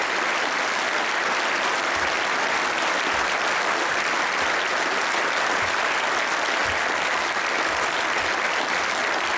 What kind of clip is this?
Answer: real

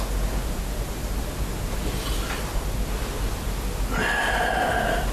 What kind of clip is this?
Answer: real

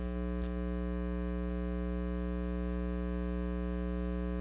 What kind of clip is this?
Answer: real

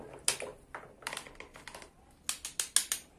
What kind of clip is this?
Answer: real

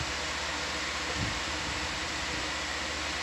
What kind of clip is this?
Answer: real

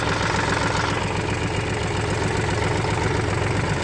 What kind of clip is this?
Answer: real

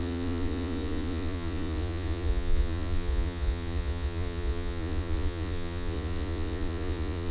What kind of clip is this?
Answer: fake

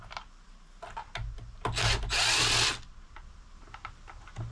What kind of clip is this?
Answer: real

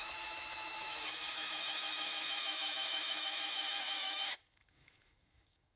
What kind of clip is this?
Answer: fake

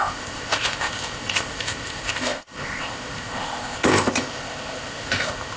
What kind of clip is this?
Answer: fake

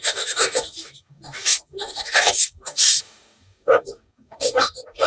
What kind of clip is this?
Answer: fake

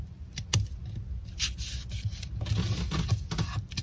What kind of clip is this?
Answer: real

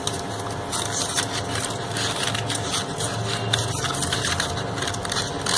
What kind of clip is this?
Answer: real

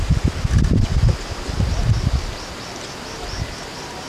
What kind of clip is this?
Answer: real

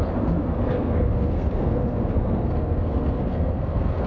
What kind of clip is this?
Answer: fake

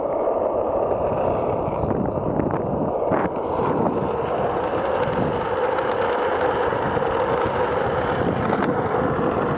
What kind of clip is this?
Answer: real